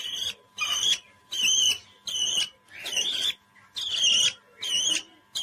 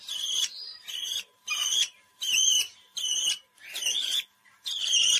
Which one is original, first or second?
first